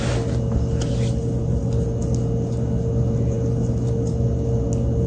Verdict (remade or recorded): recorded